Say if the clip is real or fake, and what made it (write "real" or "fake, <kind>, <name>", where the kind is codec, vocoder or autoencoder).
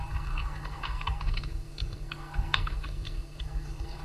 fake, codec, SNAC